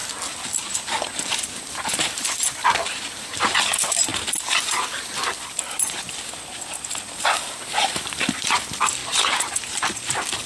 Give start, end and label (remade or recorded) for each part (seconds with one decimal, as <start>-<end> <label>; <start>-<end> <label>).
0.0-1.3 recorded; 1.3-4.1 remade; 4.1-4.7 recorded; 4.7-9.0 remade; 9.0-10.1 recorded; 10.1-10.5 remade

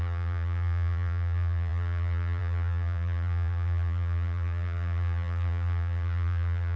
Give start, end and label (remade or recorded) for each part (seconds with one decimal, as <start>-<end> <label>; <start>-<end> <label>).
0.0-6.8 remade

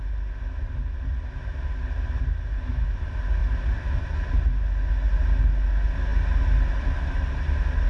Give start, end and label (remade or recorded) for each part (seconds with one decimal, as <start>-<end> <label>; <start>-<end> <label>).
0.0-7.9 recorded